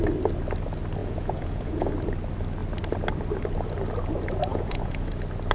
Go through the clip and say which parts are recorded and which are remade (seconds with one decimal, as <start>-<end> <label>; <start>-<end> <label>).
0.0-1.0 recorded; 1.0-1.9 remade; 1.9-4.5 recorded; 4.5-5.1 remade; 5.1-5.5 recorded